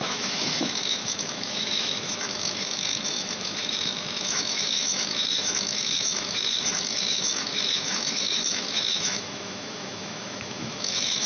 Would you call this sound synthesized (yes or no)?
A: yes